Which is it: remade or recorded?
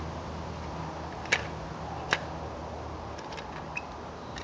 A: recorded